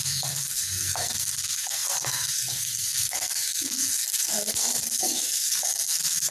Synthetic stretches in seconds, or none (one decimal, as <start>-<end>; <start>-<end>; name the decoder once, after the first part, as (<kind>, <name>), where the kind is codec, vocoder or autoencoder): 0.0-6.3 (codec, SNAC)